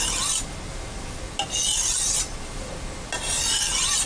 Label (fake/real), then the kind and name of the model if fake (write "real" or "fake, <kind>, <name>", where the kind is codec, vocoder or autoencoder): real